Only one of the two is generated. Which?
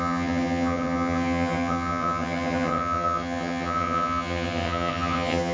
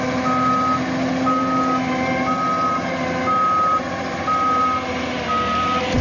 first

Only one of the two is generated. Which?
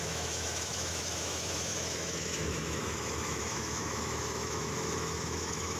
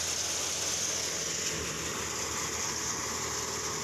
first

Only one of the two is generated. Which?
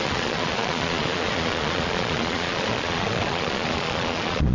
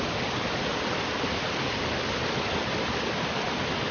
first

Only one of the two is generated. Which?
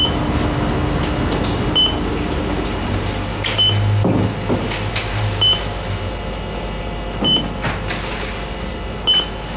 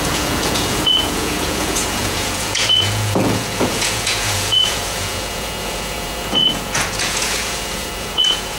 second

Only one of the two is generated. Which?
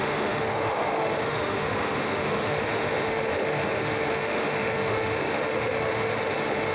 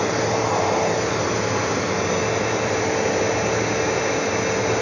first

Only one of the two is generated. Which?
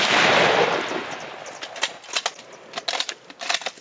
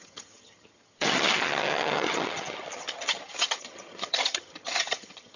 second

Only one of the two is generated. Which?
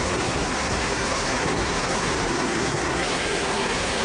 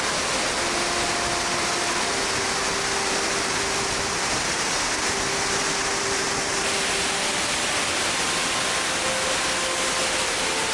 first